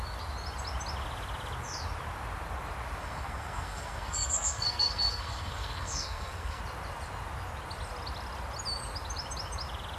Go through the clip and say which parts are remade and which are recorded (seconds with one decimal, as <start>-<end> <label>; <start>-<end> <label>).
0.0-3.0 recorded; 3.0-6.6 remade; 6.6-10.0 recorded